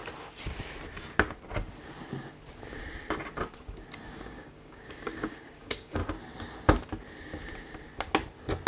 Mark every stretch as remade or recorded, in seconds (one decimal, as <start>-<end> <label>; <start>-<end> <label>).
0.0-4.1 recorded; 4.1-6.0 remade; 6.0-8.7 recorded